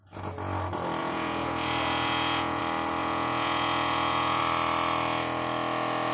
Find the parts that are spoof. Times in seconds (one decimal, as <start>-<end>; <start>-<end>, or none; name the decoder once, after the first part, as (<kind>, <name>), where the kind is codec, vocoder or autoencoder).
1.0-2.6 (vocoder, Vocos); 3.0-4.4